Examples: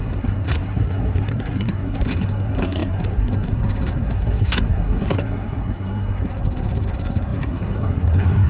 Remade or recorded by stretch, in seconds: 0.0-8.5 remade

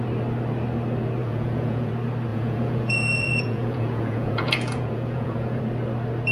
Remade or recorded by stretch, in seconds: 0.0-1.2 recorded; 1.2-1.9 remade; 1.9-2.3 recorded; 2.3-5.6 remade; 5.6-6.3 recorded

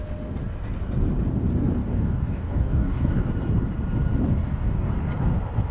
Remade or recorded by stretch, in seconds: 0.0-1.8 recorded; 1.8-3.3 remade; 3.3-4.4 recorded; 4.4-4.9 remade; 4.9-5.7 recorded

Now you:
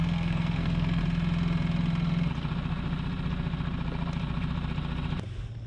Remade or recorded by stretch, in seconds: 0.0-1.0 remade; 1.0-5.7 recorded

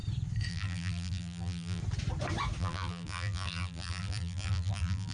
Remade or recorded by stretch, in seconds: 0.0-0.5 recorded; 0.5-1.8 remade; 1.8-2.6 recorded; 2.6-5.1 remade